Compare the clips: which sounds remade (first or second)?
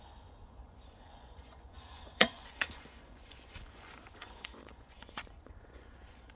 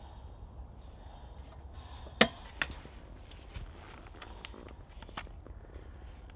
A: first